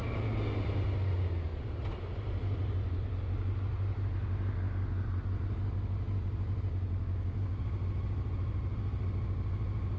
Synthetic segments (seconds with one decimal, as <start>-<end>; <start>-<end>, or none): none